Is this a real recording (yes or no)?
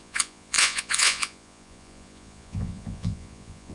no